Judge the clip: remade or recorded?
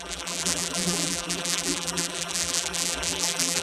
remade